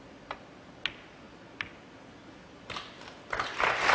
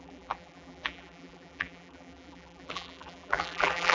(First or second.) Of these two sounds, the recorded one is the first